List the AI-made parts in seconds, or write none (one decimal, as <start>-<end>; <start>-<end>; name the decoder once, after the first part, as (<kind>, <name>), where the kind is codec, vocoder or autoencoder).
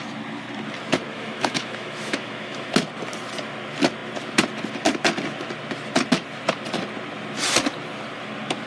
1.1-2.7 (autoencoder, DAC-VAE)